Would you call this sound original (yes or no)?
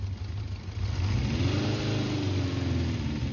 yes